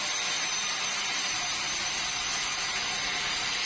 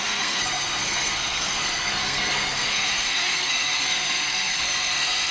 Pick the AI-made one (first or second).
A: second